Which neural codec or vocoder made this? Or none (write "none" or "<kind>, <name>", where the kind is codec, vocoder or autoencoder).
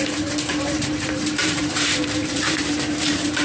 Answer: vocoder, BigVGAN v2